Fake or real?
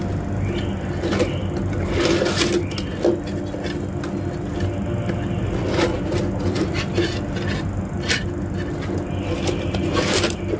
real